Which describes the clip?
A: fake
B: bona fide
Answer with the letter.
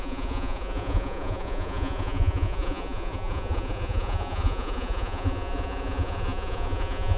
A